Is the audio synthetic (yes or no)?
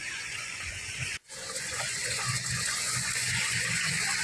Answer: yes